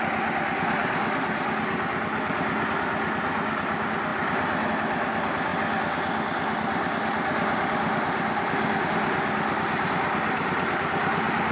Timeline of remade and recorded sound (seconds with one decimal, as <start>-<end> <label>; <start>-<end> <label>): 0.0-11.5 recorded